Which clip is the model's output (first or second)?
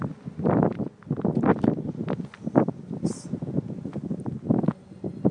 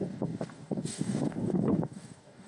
second